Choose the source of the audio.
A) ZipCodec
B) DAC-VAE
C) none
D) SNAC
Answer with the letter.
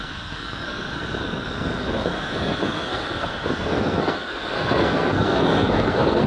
D